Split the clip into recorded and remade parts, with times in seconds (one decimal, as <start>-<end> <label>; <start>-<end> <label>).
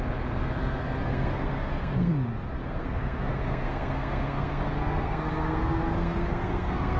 0.0-1.0 recorded; 1.0-2.1 remade; 2.1-2.6 recorded; 2.6-7.0 remade